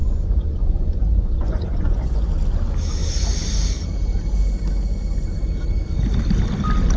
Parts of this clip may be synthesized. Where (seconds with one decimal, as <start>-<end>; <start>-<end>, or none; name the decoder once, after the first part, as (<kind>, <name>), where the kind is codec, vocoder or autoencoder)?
0.0-2.3 (vocoder, Vocos)